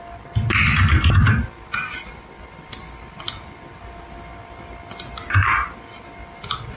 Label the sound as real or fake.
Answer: real